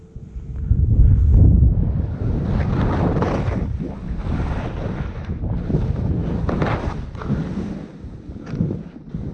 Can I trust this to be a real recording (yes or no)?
yes